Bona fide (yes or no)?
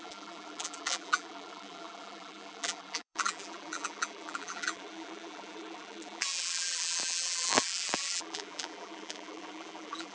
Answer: no